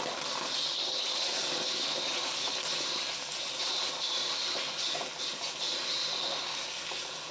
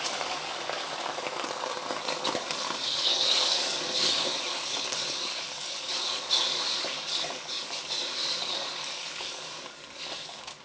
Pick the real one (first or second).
first